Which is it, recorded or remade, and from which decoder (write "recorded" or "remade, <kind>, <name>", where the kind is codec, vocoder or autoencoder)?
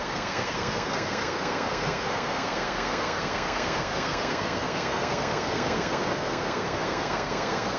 remade, codec, SNAC